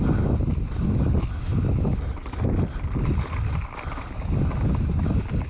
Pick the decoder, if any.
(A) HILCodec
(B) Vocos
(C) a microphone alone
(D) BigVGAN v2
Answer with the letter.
C